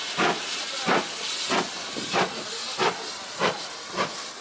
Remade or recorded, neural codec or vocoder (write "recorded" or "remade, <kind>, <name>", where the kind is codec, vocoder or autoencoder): recorded